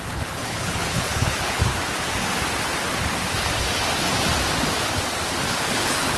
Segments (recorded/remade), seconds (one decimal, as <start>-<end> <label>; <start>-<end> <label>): 0.0-1.7 remade; 1.7-5.4 recorded; 5.4-6.2 remade